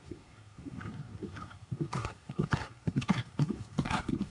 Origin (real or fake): fake